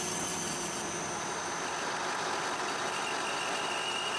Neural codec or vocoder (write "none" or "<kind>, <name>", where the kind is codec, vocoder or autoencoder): none